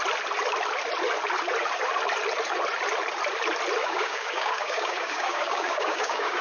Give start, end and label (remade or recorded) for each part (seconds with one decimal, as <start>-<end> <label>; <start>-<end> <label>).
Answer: 0.0-3.8 recorded; 3.8-6.4 remade